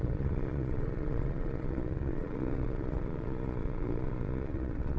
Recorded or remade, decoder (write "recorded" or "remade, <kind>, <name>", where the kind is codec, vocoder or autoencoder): remade, vocoder, Vocos